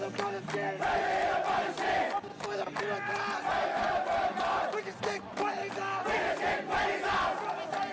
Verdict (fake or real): real